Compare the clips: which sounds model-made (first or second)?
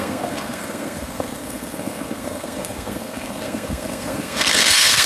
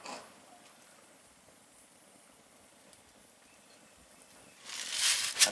first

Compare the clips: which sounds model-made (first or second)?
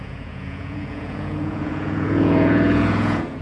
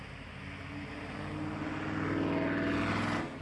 first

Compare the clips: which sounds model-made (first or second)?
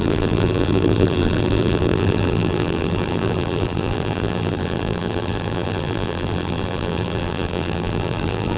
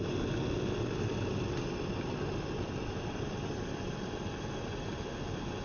first